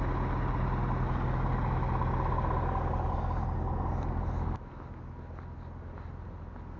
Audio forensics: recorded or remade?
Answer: recorded